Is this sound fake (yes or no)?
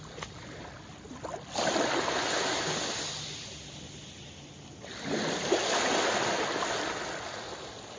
no